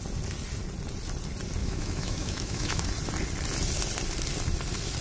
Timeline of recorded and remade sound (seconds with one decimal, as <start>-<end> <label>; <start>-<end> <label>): 0.0-1.6 recorded; 1.6-2.9 remade; 2.9-5.0 recorded